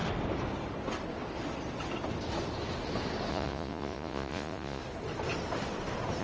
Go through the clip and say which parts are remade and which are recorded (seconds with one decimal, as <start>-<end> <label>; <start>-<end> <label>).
0.0-3.3 recorded; 3.3-4.8 remade; 4.8-6.2 recorded